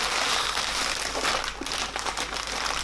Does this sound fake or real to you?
real